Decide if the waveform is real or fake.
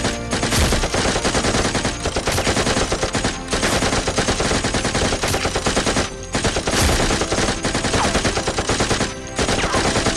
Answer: real